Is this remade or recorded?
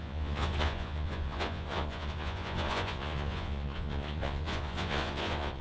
remade